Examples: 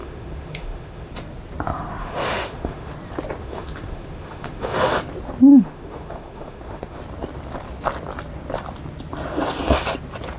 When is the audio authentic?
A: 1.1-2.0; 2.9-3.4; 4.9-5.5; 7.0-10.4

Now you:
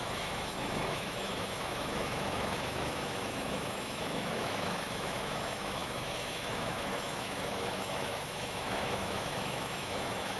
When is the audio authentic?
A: none

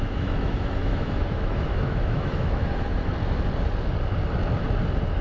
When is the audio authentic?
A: 3.1-5.2

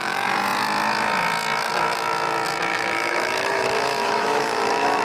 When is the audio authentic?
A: 0.0-2.7